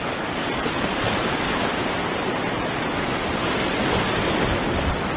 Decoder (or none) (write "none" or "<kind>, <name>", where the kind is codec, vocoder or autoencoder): none